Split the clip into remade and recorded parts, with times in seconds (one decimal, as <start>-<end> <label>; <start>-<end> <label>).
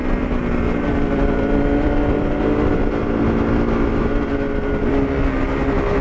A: 0.0-0.4 recorded; 0.4-4.0 remade; 4.0-6.0 recorded